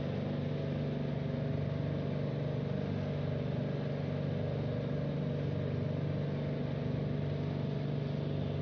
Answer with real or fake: real